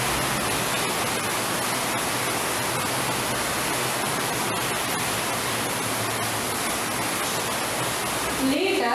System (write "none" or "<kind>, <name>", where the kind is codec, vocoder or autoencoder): none